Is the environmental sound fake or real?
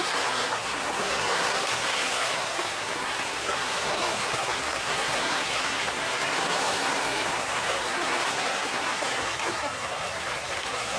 fake